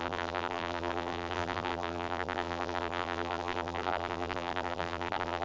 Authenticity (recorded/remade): remade